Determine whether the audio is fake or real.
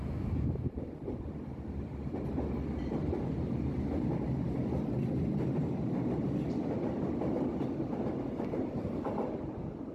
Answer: real